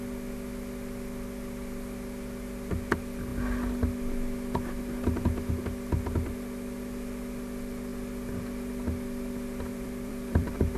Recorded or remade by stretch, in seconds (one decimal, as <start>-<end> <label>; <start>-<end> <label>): 0.0-9.7 recorded; 9.7-10.8 remade